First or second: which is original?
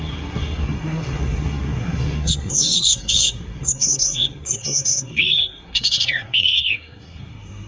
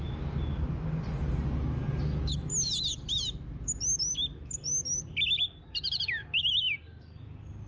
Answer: second